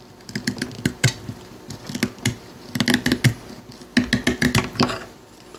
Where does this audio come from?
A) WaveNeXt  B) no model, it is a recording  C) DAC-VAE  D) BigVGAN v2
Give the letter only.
B